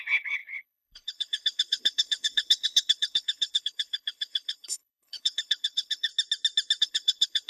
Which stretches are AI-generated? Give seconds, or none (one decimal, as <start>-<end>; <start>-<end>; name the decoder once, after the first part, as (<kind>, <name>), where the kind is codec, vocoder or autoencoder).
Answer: 0.0-6.1 (codec, HILCodec); 6.8-7.5